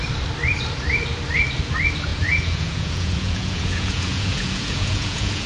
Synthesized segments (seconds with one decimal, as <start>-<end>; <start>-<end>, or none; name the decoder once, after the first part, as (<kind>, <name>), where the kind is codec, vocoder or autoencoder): 2.1-5.5 (vocoder, Vocos)